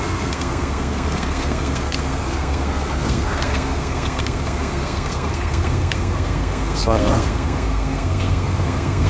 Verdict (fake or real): fake